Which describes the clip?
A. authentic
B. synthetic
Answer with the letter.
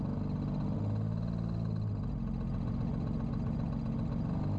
A